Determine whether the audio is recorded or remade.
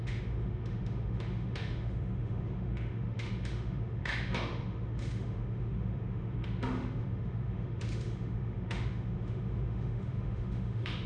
remade